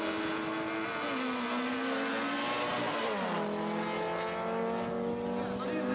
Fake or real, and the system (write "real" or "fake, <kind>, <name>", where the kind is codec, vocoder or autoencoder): real